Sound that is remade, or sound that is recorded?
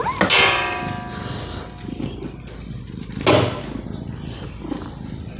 recorded